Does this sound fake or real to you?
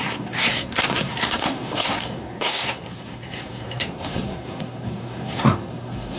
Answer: fake